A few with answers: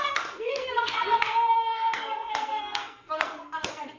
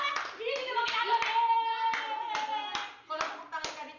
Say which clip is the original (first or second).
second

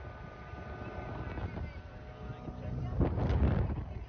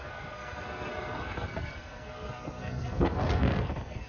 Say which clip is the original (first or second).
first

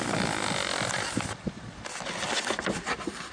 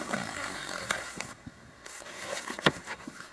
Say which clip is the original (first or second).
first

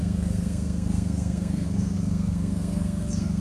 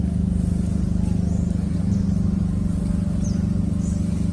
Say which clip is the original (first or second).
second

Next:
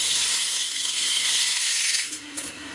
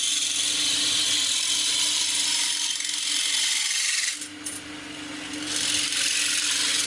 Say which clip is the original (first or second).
second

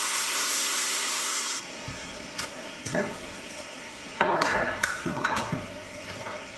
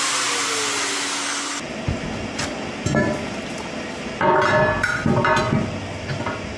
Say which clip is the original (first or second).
second